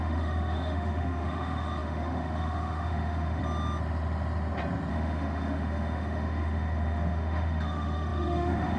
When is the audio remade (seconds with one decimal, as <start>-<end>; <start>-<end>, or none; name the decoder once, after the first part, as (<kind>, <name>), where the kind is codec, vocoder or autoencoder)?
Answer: 0.0-3.4 (autoencoder, DAC-VAE); 4.9-8.8